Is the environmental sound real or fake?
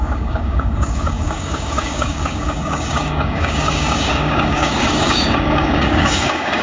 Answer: fake